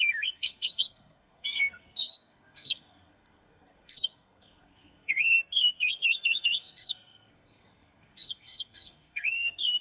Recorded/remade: remade